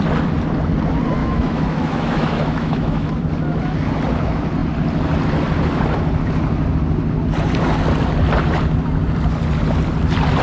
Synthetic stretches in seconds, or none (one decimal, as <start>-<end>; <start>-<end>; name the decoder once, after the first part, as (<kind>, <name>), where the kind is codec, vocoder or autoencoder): 1.2-3.2 (autoencoder, DAC-VAE)